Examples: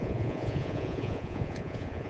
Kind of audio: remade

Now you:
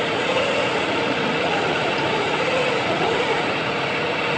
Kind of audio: remade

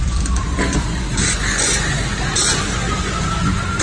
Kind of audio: remade